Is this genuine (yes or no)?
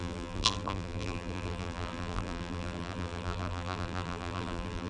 no